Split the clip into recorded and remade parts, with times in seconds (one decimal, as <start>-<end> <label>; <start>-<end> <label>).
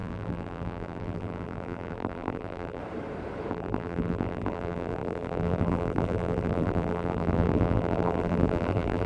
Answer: 0.0-2.8 remade; 2.8-3.5 recorded; 3.5-9.1 remade